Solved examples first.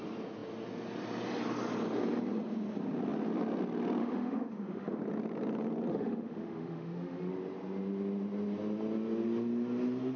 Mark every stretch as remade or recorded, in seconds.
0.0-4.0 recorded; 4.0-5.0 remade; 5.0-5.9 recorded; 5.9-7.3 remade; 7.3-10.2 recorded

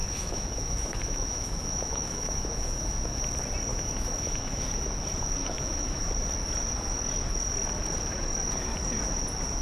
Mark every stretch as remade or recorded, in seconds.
0.0-3.2 remade; 3.2-3.7 recorded; 3.7-4.6 remade; 4.6-5.4 recorded; 5.4-6.0 remade; 6.0-9.6 recorded

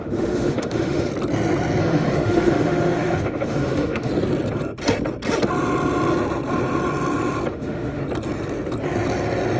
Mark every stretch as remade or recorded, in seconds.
0.0-1.1 remade; 1.1-1.8 recorded; 1.8-4.1 remade; 4.1-7.5 recorded; 7.5-8.0 remade; 8.0-9.6 recorded

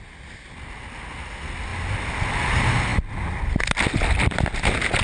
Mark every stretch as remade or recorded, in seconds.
0.0-5.0 recorded